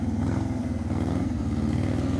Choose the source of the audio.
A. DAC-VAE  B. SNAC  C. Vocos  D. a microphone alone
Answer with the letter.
B